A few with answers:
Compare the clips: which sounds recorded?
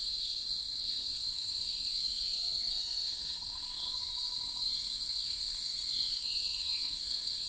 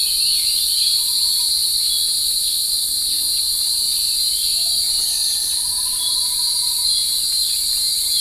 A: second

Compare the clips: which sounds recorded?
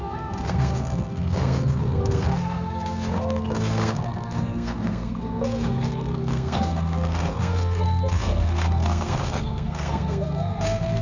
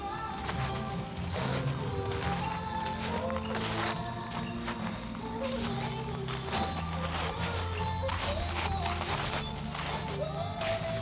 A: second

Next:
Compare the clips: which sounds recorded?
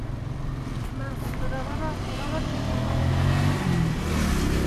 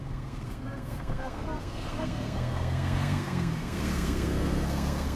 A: first